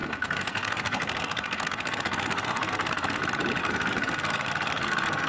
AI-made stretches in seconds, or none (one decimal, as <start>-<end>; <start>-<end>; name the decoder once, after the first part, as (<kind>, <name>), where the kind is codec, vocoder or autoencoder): 0.0-3.2 (codec, SNAC); 3.6-5.3